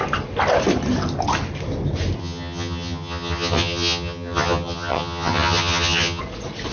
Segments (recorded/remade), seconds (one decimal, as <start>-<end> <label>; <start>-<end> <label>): 0.0-2.2 recorded; 2.2-6.2 remade; 6.2-6.7 recorded

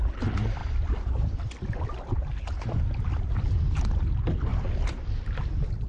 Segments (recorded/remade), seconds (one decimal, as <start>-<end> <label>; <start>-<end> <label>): 0.0-0.6 recorded; 0.6-1.4 remade; 1.4-5.9 recorded

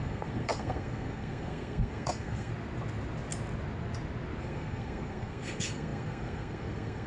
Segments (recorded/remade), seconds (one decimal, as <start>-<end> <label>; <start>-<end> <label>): 0.0-2.5 remade; 2.5-4.4 recorded; 4.4-7.1 remade

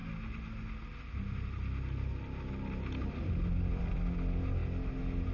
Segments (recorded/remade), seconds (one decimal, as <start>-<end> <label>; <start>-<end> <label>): 0.0-5.3 recorded

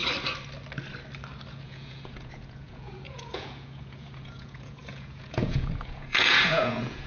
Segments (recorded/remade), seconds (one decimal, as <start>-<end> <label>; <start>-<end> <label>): 0.0-1.5 recorded; 1.5-7.1 remade